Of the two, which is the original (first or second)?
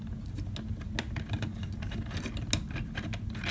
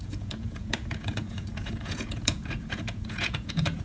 first